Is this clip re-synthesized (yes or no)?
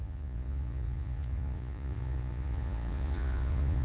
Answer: yes